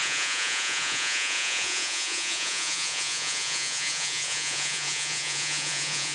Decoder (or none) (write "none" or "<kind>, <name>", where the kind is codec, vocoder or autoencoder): vocoder, Vocos